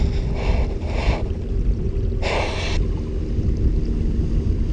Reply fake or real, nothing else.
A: real